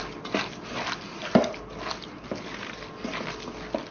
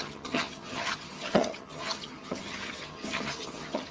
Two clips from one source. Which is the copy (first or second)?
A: second